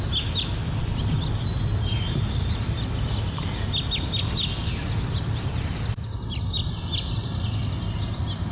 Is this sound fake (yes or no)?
no